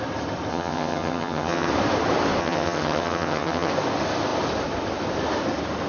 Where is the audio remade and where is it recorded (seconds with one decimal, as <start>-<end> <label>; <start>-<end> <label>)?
0.0-0.5 recorded; 0.5-1.7 remade; 1.7-2.4 recorded; 2.4-3.7 remade; 3.7-5.9 recorded